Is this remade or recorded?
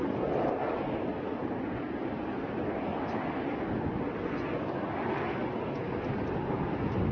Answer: recorded